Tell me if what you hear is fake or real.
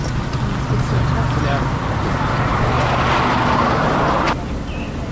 real